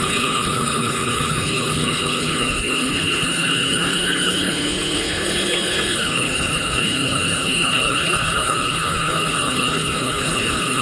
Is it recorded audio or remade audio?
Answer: remade